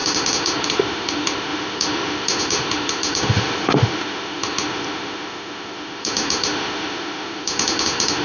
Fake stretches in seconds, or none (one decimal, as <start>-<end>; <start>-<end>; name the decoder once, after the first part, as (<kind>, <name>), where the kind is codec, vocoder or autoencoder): 0.0-8.2 (autoencoder, DAC-VAE)